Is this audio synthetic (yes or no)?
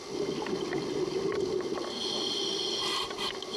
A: no